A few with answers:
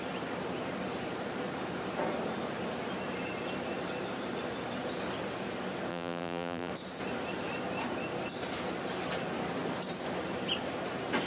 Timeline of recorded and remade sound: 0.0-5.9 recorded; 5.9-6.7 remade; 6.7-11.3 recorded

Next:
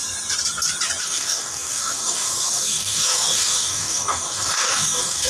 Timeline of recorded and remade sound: 0.0-1.0 recorded; 1.0-5.3 remade

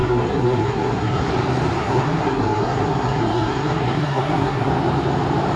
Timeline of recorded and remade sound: 0.0-1.3 remade; 1.3-1.8 recorded; 1.8-4.7 remade; 4.7-5.6 recorded

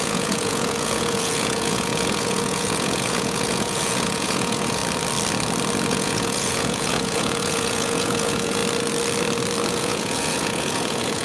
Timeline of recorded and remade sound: 0.0-4.8 remade; 4.8-5.9 recorded; 5.9-8.6 remade; 8.6-9.7 recorded; 9.7-11.2 remade

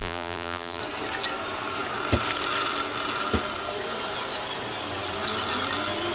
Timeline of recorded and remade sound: 0.0-0.8 remade; 0.8-6.1 recorded

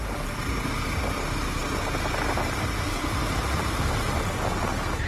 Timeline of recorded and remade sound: 0.0-5.1 recorded

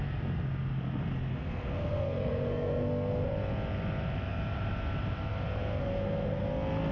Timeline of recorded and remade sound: 0.0-1.3 recorded; 1.3-3.3 remade; 3.3-5.8 recorded; 5.8-6.4 remade; 6.4-6.9 recorded

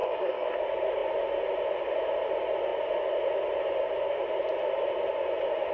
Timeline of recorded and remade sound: 0.0-0.6 remade; 0.6-5.7 recorded